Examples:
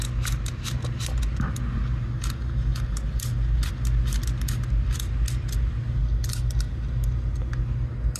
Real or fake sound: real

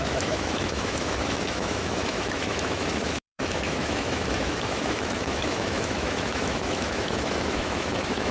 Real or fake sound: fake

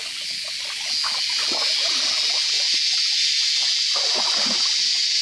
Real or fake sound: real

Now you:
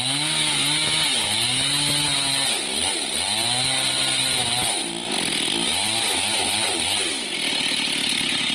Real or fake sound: real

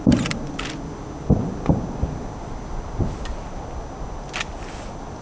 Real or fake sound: real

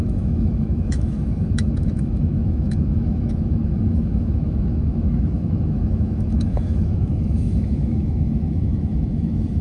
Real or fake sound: fake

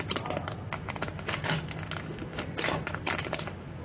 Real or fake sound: real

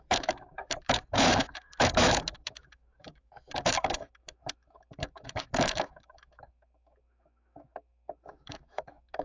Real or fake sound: fake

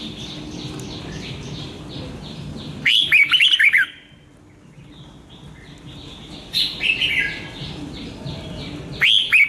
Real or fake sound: real